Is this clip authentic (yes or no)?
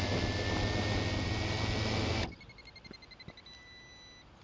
yes